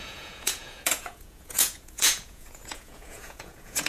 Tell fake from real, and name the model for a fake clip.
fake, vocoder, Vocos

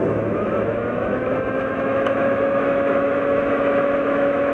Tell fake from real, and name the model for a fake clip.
fake, autoencoder, DAC-VAE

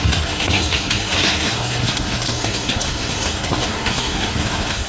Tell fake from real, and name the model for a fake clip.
fake, codec, SNAC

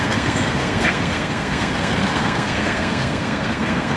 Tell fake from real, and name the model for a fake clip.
fake, codec, SNAC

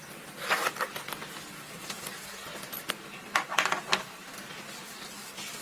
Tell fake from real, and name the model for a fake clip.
real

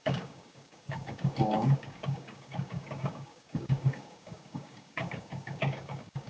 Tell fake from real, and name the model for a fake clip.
fake, codec, DAC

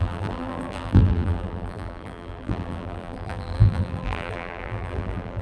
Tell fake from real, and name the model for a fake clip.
fake, vocoder, BigVGAN v2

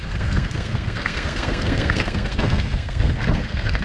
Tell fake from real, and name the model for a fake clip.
fake, codec, SNAC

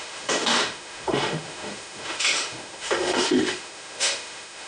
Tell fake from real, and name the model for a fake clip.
fake, autoencoder, DAC-VAE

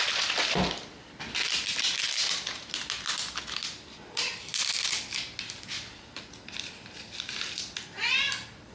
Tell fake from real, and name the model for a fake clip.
real